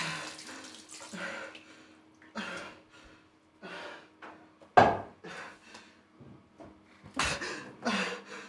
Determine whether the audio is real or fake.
real